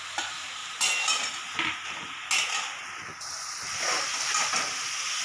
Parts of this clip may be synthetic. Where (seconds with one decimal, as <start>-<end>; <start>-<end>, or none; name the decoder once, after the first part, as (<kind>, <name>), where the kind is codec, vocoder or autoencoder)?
none